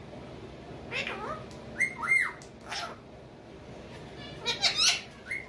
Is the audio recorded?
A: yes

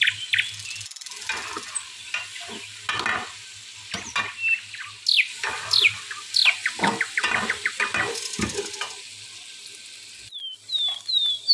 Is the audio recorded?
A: yes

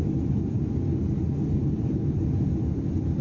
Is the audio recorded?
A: yes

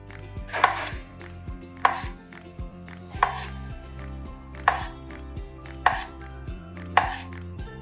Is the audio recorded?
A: no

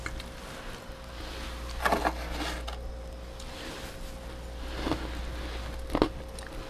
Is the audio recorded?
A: yes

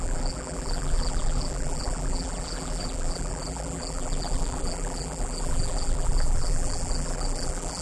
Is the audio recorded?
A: no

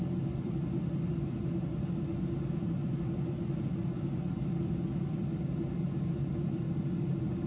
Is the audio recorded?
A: yes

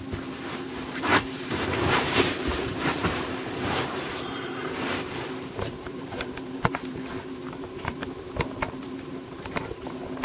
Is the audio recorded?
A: no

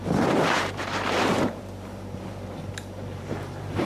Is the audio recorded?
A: no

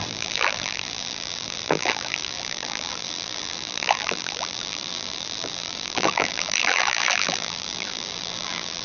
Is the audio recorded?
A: no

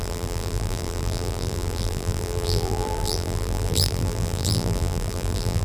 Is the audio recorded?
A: no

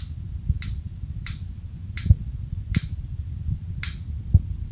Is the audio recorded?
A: no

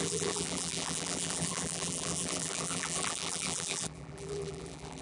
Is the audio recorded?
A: no